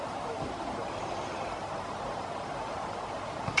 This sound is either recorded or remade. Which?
remade